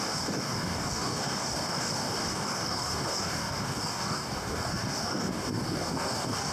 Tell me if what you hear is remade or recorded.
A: remade